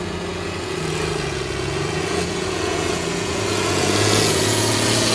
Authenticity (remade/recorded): remade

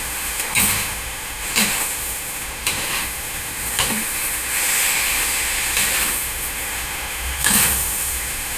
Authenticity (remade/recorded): remade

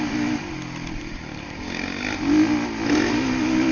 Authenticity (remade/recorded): recorded